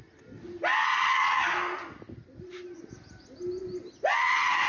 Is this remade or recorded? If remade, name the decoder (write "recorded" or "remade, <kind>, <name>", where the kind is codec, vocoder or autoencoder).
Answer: recorded